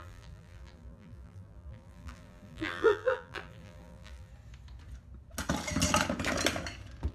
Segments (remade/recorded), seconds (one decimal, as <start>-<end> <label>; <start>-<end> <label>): 0.0-4.3 remade; 4.3-7.1 recorded